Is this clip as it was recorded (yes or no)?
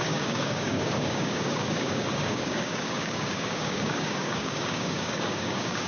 no